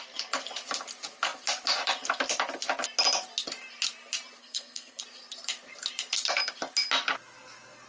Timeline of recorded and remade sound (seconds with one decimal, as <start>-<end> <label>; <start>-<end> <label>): 0.0-4.4 recorded; 4.4-5.0 remade; 5.0-7.9 recorded